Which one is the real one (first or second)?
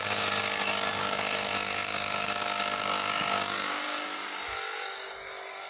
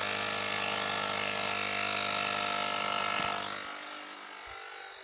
second